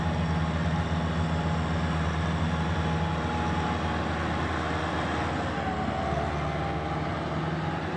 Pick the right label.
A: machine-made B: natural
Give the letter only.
B